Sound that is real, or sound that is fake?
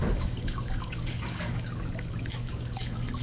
fake